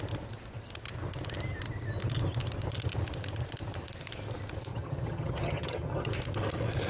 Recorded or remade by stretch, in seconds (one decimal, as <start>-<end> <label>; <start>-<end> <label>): 0.0-4.7 recorded; 4.7-6.1 remade; 6.1-6.9 recorded